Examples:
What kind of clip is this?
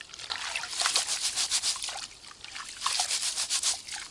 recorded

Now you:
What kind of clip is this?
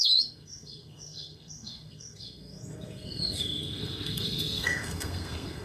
remade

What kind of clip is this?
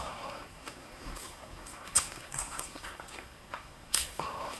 remade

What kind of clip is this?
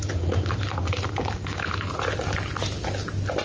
recorded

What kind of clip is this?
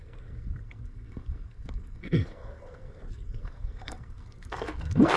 remade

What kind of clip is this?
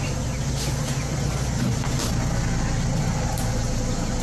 recorded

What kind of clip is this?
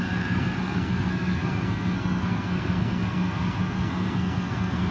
remade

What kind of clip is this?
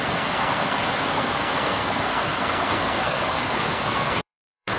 remade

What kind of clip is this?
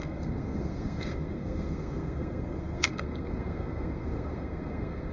remade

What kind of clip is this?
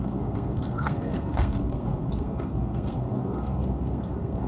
remade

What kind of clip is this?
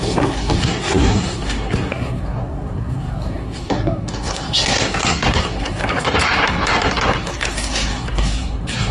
remade